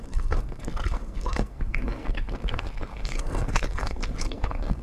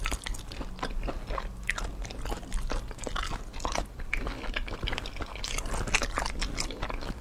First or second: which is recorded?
second